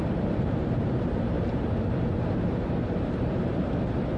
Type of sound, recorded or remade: remade